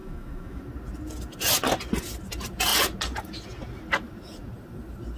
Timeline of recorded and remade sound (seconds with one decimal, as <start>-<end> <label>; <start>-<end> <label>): 0.0-0.6 remade; 0.6-5.2 recorded